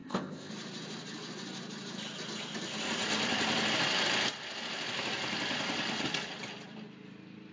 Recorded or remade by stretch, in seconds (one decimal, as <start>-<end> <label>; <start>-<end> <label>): 0.0-0.5 remade; 0.5-7.5 recorded